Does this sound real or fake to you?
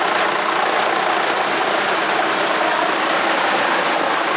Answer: real